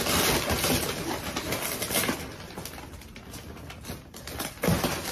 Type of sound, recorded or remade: recorded